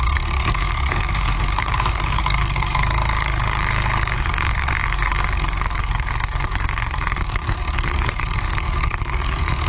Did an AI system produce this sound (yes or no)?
yes